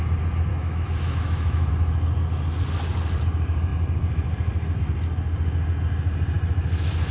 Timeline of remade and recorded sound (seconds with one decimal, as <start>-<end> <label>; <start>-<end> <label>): 0.0-0.5 recorded; 0.5-1.7 remade; 1.7-7.1 recorded

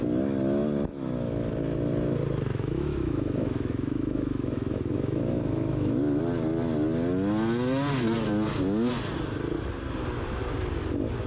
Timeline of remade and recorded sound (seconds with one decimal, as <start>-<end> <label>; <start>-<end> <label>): 0.0-0.9 recorded; 0.9-1.5 remade; 1.5-2.5 recorded; 2.5-6.2 remade; 6.2-11.3 recorded